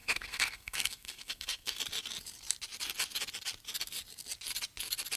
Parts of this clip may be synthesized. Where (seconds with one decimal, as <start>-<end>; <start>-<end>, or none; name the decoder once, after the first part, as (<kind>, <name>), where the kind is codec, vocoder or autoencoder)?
0.0-1.8 (codec, SNAC)